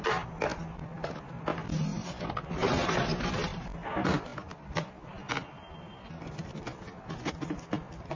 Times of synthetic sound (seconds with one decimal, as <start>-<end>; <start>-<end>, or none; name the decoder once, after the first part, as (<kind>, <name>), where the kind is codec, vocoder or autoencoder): none